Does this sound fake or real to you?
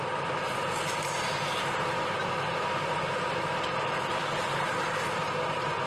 real